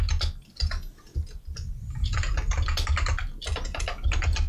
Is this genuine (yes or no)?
yes